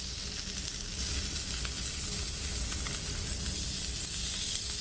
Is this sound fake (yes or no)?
no